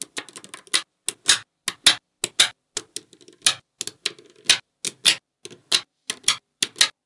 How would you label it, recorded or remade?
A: recorded